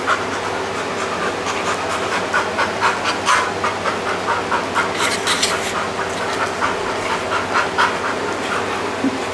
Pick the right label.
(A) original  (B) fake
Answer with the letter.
A